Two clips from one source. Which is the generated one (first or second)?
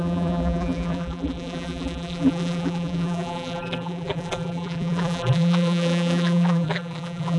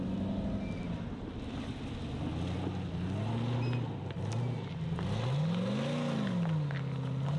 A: first